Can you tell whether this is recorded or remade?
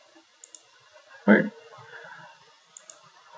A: recorded